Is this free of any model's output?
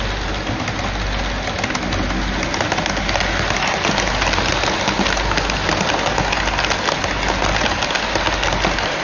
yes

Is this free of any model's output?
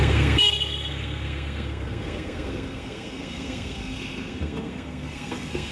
no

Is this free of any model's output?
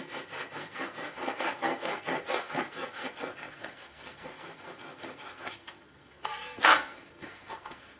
no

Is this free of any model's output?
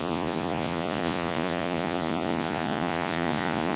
no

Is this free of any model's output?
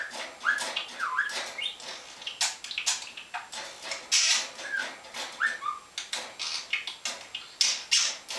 yes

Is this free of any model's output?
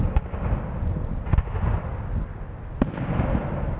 yes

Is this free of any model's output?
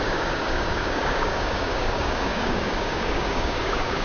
no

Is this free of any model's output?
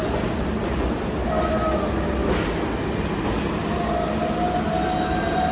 yes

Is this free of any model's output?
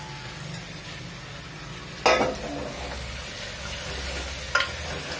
yes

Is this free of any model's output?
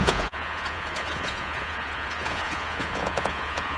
no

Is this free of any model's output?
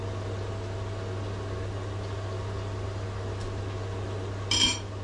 yes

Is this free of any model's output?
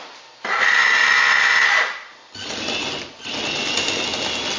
yes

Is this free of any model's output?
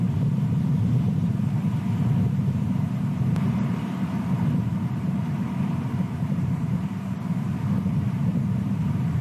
no